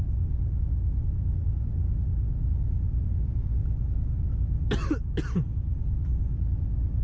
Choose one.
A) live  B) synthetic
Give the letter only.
A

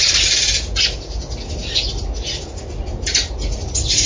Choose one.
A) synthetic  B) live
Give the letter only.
B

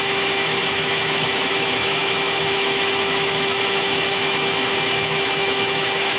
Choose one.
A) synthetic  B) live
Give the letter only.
A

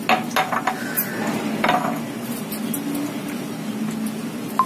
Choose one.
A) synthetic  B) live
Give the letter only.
B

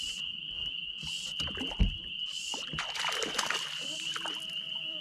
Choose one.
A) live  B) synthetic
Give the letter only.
A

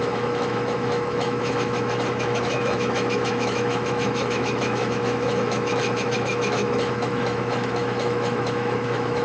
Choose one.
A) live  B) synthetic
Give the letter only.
B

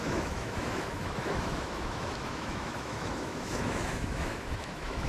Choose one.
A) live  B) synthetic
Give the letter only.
B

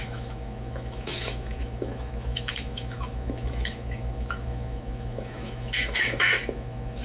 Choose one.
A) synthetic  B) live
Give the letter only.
A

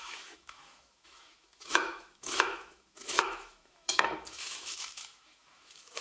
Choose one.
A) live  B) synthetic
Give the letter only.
B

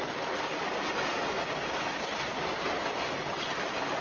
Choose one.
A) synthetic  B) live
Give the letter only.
B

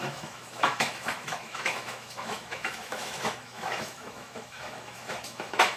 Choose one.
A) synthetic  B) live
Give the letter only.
A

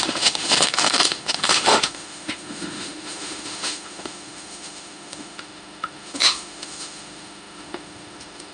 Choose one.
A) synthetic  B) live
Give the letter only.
A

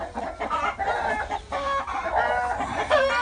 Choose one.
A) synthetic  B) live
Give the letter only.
B